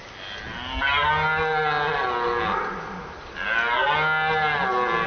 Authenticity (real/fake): real